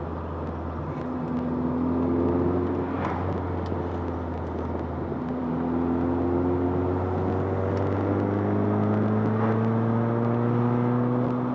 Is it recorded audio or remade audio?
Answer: recorded